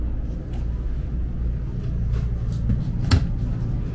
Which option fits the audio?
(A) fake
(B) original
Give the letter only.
B